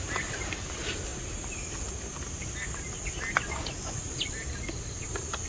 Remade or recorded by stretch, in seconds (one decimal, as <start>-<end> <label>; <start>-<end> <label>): 0.0-5.5 recorded